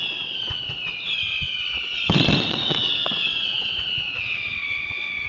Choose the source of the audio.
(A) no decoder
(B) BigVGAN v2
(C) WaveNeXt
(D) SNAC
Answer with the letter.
C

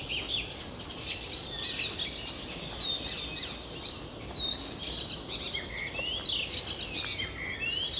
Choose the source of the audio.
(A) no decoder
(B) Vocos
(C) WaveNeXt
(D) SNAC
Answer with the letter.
A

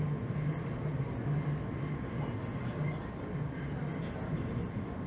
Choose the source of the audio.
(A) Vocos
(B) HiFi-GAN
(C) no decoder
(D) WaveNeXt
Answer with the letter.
C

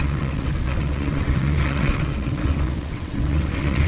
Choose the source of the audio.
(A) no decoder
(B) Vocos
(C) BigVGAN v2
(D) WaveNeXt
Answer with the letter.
D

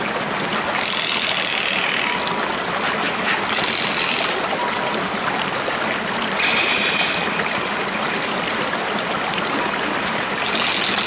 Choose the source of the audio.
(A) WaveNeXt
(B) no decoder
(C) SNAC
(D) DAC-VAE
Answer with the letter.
B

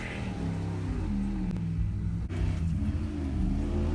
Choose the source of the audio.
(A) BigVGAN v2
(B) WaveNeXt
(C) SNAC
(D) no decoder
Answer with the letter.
D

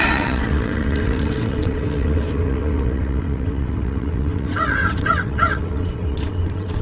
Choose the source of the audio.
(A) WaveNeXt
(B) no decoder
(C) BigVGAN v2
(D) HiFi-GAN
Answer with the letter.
A